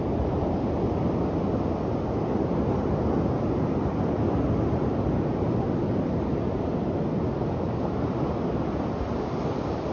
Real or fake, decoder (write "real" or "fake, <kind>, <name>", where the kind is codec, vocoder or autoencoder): real